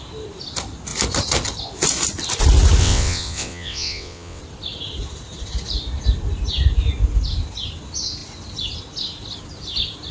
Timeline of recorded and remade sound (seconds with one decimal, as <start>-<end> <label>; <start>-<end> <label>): 0.0-2.8 recorded; 2.8-4.4 remade; 4.4-10.1 recorded